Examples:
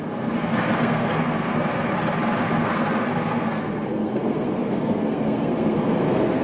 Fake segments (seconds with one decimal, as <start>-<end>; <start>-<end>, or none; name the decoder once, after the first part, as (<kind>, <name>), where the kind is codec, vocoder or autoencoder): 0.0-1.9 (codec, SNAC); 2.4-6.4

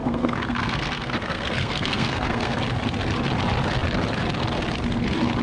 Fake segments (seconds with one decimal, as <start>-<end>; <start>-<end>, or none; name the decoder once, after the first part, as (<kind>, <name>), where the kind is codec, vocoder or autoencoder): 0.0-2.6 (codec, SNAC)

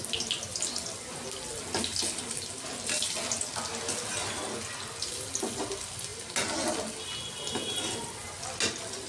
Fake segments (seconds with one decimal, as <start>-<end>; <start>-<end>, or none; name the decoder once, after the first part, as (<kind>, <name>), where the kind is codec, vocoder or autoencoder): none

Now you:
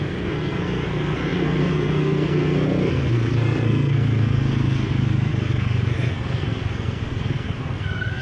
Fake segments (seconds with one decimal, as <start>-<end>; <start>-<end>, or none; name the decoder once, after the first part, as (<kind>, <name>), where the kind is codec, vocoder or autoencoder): 0.0-8.2 (codec, SNAC)

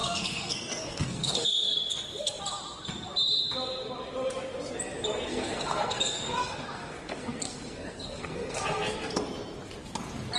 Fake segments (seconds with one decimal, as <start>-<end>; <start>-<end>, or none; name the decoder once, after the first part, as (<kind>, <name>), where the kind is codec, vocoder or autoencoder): 0.0-2.4 (codec, SNAC); 5.3-9.2

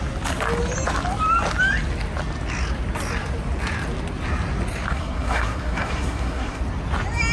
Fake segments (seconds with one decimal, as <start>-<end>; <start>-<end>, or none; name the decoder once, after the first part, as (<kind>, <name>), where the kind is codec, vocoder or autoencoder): 4.9-6.6 (codec, SNAC)

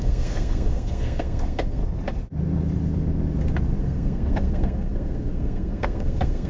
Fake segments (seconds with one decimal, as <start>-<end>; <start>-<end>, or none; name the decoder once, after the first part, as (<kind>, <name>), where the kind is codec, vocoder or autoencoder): 0.0-1.8 (codec, SNAC); 3.8-6.5

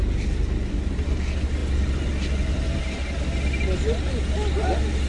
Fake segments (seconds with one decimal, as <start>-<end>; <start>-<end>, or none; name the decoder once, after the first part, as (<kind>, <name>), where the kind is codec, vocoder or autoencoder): none